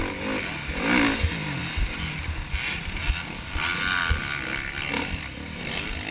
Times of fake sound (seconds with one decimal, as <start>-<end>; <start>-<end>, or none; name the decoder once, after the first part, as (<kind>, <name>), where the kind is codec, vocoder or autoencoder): none